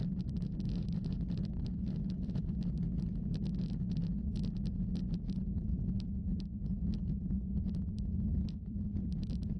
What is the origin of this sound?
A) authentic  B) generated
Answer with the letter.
B